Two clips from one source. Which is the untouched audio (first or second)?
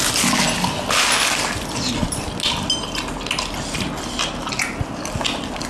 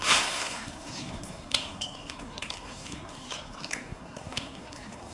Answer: first